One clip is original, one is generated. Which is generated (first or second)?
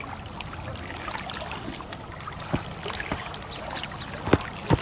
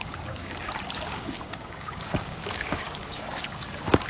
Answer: second